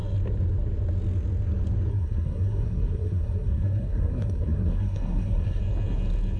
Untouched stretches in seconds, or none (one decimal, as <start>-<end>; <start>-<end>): 0.0-1.9; 5.6-6.4